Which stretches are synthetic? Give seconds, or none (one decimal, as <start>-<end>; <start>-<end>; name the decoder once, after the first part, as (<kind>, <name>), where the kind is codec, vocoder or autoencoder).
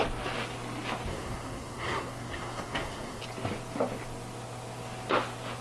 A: 1.1-3.2 (codec, SNAC)